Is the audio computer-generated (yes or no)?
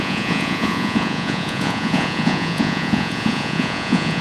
yes